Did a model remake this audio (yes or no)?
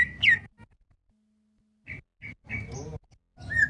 no